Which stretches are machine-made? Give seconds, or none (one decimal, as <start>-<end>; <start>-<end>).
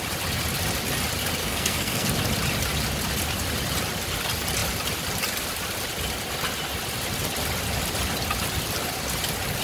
1.4-2.1